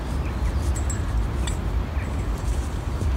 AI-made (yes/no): no